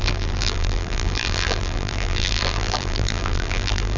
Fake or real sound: fake